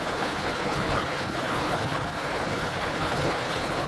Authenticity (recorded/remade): remade